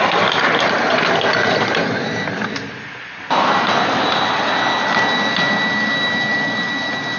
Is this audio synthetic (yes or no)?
no